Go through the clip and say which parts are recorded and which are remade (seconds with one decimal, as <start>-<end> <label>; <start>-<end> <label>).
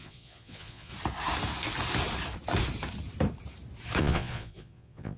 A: 0.0-0.9 remade; 0.9-4.0 recorded; 4.0-5.2 remade